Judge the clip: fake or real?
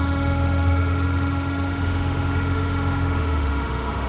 fake